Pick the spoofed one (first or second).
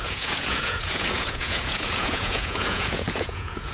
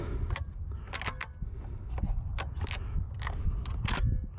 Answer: first